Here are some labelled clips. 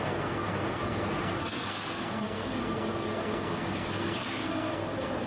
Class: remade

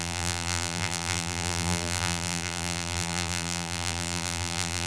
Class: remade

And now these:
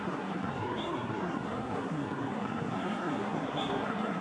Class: remade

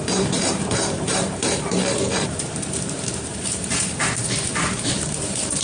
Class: remade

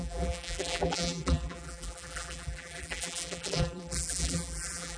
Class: remade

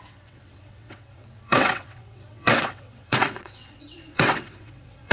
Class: remade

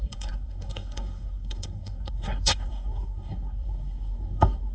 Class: remade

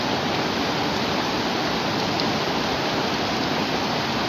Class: recorded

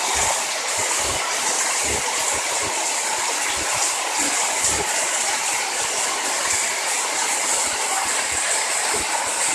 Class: recorded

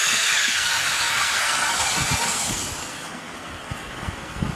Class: remade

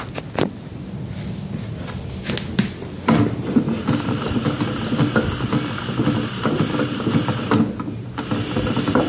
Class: recorded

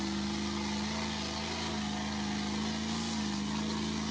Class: recorded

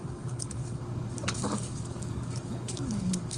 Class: remade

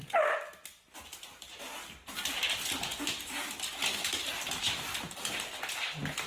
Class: recorded